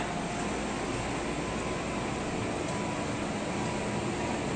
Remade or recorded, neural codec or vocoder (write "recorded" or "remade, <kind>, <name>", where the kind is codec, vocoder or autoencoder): recorded